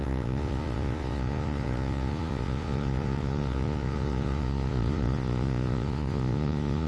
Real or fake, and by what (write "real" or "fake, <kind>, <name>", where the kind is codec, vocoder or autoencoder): fake, vocoder, Vocos